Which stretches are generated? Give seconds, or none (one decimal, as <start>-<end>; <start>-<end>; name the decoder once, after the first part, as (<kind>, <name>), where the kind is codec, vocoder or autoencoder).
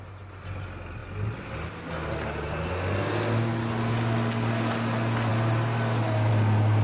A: none